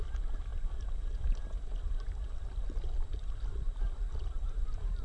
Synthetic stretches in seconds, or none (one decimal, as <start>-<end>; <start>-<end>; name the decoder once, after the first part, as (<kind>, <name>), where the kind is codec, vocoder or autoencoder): 0.0-0.5 (vocoder, BigVGAN v2); 2.8-4.1